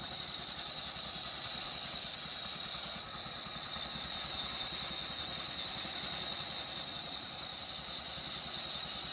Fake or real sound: real